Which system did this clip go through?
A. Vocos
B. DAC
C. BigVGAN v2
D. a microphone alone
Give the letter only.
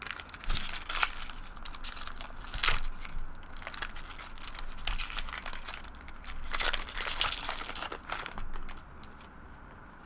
D